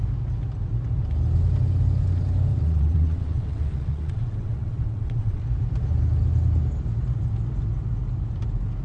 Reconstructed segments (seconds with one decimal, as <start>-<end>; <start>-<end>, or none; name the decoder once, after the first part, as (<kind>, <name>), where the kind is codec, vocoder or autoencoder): 2.5-5.4 (vocoder, WaveNeXt)